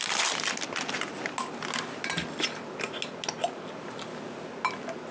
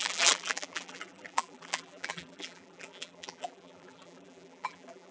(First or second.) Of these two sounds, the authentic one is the first